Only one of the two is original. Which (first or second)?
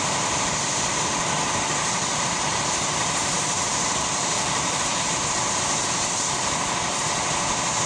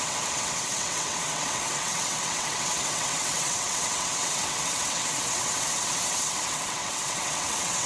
first